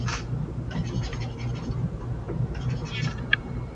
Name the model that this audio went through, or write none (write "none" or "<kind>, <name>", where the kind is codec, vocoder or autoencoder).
vocoder, BigVGAN v2